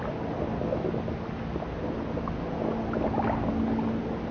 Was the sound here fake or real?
real